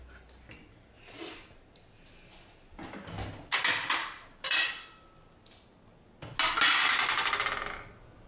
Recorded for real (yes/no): yes